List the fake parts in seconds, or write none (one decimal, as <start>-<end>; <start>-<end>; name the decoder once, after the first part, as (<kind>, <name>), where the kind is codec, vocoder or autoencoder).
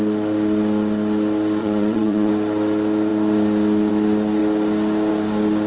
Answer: 1.6-2.3 (vocoder, Vocos)